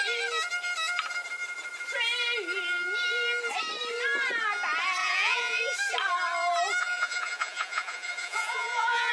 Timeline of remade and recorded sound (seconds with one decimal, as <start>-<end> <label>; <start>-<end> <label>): 0.0-5.0 recorded; 5.0-5.6 remade; 5.6-6.8 recorded; 6.8-9.1 remade